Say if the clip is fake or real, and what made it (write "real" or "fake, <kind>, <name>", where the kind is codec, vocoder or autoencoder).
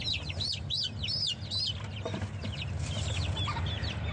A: real